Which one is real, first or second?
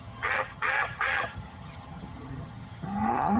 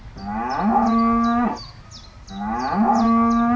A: second